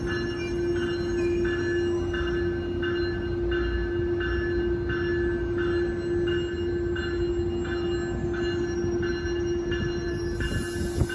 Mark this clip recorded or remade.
recorded